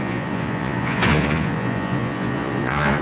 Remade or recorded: remade